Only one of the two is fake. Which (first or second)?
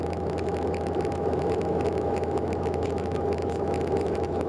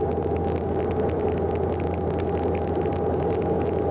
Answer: first